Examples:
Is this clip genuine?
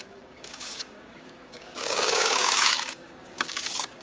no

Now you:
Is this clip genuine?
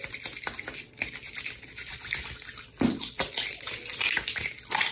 yes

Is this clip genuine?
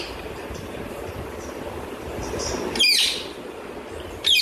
yes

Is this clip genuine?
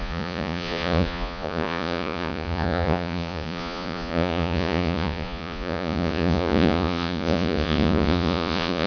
no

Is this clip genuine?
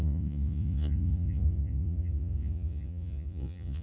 no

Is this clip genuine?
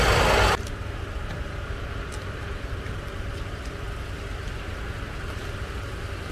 yes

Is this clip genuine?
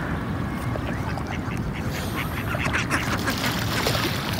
yes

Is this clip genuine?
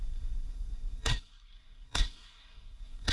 no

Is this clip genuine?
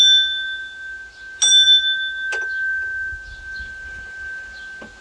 yes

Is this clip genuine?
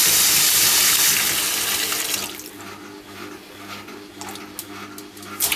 yes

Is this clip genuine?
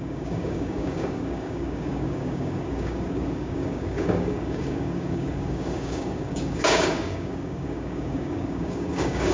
no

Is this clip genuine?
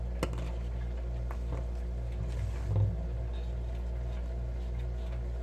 yes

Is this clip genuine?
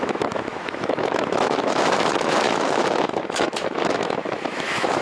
no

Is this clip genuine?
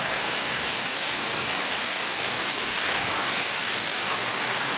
no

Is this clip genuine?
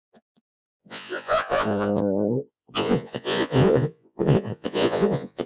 no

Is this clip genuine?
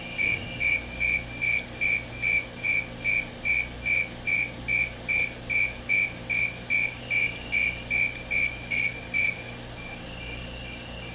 yes